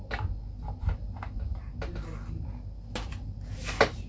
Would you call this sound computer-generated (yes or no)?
no